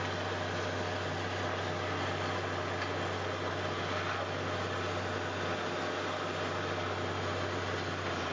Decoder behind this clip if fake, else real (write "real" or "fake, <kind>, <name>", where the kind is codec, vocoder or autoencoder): real